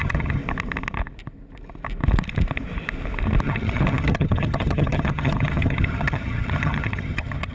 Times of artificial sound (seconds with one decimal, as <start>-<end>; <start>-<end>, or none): 0.0-0.4; 3.4-7.5